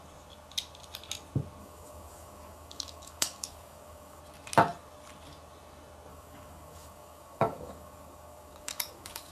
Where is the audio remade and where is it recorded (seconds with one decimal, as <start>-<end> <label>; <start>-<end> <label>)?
0.0-1.6 recorded; 1.6-4.2 remade; 4.2-6.1 recorded; 6.1-9.3 remade